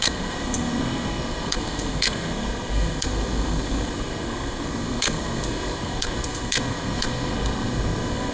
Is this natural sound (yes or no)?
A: no